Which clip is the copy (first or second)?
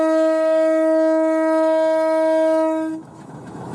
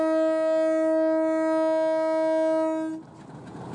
first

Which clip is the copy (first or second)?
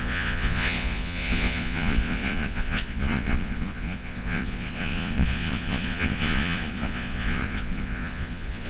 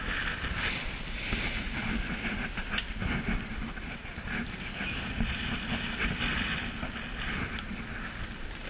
first